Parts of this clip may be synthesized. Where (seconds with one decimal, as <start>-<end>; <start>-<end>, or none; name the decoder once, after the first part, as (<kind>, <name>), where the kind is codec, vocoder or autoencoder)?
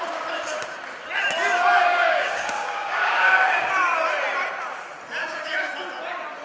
1.8-3.7 (codec, DAC); 5.2-5.7